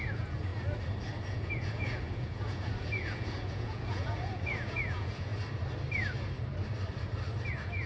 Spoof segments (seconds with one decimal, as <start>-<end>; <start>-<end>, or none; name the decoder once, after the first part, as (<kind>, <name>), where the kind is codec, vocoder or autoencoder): 0.0-0.5 (vocoder, Vocos); 1.3-5.3; 7.5-7.9